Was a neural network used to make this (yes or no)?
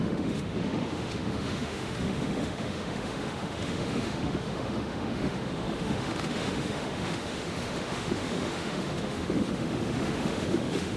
yes